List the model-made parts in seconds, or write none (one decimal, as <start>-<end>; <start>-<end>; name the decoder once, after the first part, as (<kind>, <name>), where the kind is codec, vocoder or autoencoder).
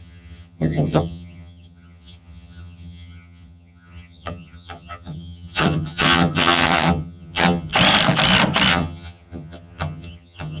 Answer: 0.0-7.7 (vocoder, HiFi-GAN); 8.7-10.6